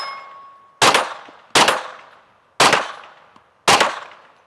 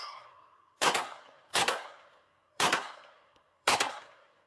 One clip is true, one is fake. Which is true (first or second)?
first